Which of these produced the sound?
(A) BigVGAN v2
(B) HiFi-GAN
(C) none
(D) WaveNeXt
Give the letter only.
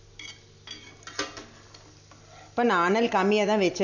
C